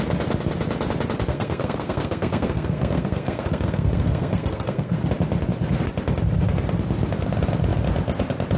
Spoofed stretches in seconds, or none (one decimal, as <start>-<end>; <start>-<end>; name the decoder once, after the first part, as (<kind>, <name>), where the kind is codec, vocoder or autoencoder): 1.3-5.0 (codec, SNAC)